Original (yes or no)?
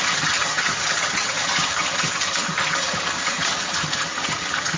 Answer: no